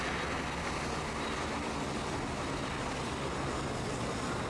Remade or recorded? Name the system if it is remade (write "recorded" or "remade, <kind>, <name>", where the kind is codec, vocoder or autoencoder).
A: recorded